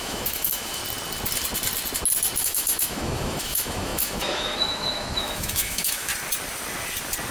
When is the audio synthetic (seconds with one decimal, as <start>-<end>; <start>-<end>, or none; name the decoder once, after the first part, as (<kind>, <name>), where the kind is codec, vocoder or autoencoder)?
0.0-0.8 (autoencoder, DAC-VAE); 2.4-6.1